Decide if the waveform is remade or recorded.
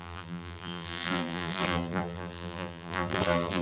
remade